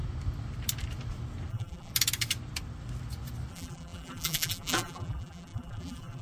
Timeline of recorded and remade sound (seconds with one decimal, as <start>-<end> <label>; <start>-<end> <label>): 0.0-1.5 recorded; 1.5-1.9 remade; 1.9-3.5 recorded; 3.5-6.2 remade